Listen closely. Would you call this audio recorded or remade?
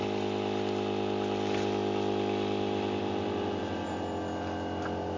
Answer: recorded